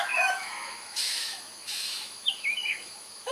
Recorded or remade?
remade